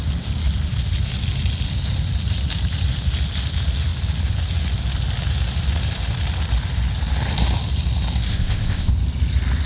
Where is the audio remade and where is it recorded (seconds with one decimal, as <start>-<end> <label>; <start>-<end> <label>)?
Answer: 0.0-8.3 recorded; 8.3-8.9 remade; 8.9-9.7 recorded